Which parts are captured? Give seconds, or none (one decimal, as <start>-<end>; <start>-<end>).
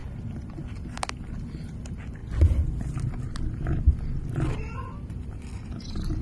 0.0-0.7; 2.2-2.8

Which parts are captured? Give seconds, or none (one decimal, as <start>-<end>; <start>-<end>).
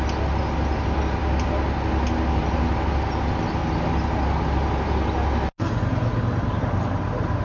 0.0-7.4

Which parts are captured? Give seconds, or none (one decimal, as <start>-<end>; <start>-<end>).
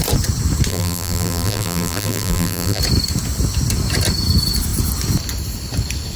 0.0-0.7; 2.8-6.2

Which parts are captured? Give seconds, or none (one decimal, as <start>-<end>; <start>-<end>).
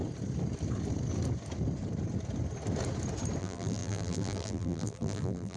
0.0-3.4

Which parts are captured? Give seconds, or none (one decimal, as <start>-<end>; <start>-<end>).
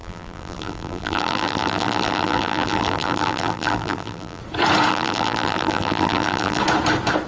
4.4-4.9; 6.6-7.3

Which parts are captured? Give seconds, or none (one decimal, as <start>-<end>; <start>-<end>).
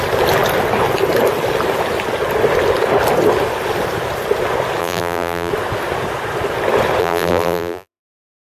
0.0-4.8; 5.5-7.0; 8.0-8.5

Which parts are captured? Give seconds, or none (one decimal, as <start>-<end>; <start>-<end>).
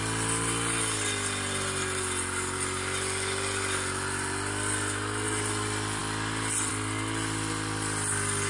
0.0-8.5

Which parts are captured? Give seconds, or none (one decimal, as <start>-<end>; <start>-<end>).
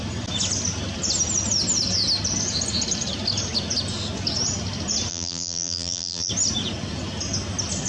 0.0-5.1; 6.3-7.9